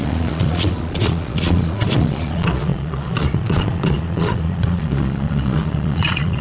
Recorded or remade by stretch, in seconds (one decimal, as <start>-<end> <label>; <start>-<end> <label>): 0.0-6.4 remade